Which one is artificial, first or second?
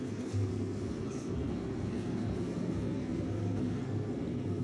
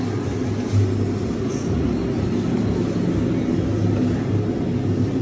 first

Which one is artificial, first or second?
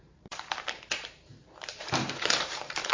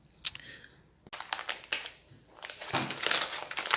first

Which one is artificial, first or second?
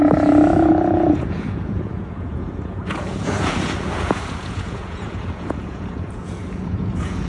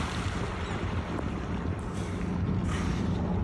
first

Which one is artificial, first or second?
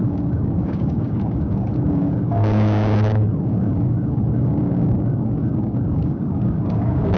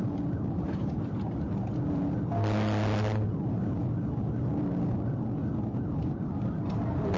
first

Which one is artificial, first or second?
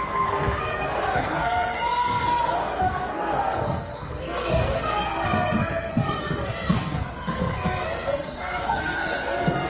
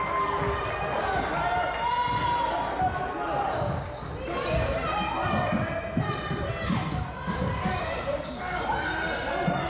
first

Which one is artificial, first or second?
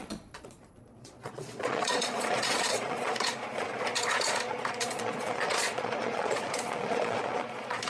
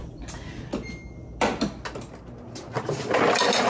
first